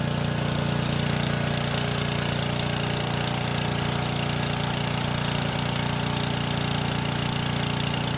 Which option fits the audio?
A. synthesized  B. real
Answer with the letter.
B